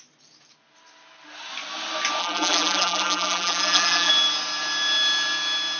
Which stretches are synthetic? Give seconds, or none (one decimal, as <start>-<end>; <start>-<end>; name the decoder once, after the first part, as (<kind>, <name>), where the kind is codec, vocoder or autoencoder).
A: 2.2-4.1 (vocoder, BigVGAN v2)